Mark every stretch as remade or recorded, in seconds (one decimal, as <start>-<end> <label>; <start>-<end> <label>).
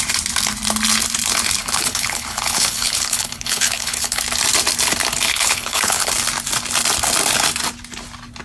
0.0-1.6 recorded; 1.6-4.2 remade; 4.2-5.3 recorded; 5.3-6.1 remade; 6.1-8.4 recorded